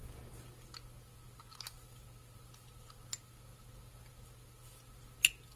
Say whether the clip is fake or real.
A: real